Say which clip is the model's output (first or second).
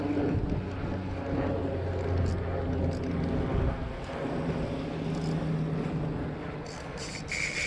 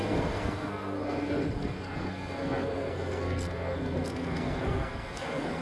second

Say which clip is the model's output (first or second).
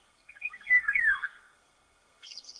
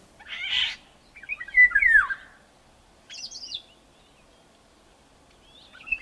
first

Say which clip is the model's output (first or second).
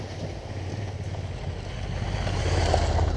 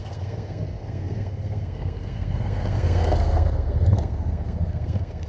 second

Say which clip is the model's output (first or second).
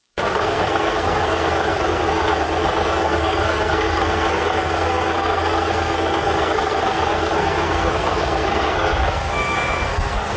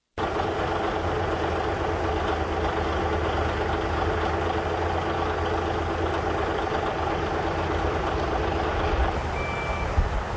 first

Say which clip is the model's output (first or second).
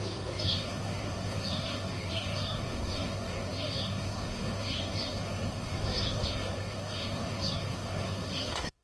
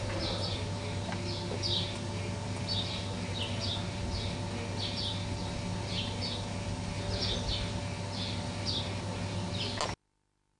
first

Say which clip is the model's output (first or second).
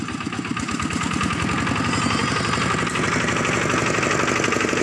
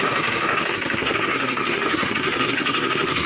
second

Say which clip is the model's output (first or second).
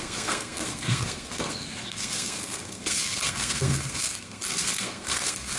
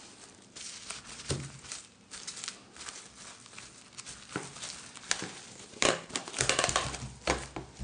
first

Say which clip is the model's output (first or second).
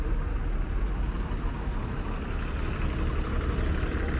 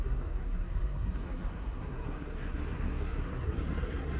second